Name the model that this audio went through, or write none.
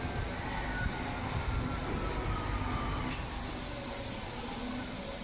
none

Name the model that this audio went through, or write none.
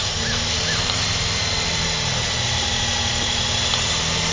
none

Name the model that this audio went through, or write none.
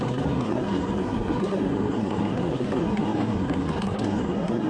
codec, SNAC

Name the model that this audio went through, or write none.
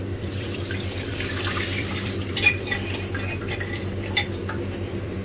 vocoder, BigVGAN v2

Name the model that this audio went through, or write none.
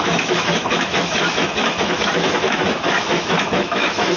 autoencoder, DAC-VAE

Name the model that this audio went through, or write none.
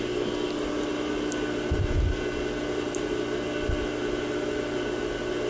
none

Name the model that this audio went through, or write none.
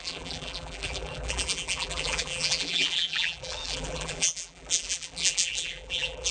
vocoder, BigVGAN v2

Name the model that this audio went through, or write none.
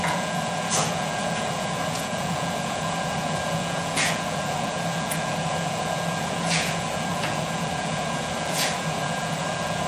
vocoder, Vocos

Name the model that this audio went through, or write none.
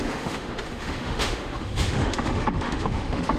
autoencoder, DAC-VAE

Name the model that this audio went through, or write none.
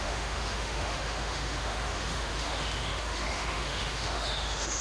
autoencoder, DAC-VAE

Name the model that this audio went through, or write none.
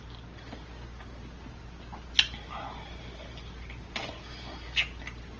none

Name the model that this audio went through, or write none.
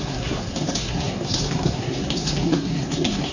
codec, SNAC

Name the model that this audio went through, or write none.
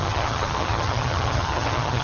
vocoder, HiFi-GAN